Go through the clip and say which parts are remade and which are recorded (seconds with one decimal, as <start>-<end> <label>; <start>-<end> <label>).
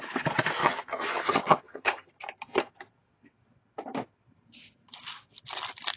0.0-0.6 recorded; 0.6-2.1 remade; 2.1-6.0 recorded